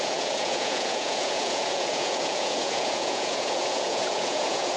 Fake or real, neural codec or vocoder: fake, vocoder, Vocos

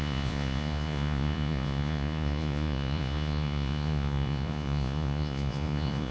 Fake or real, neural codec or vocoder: fake, vocoder, Vocos